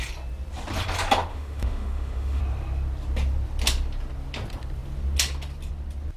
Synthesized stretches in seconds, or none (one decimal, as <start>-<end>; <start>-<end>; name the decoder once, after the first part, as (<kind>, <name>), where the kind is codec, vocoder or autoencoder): 1.3-2.4 (autoencoder, DAC-VAE)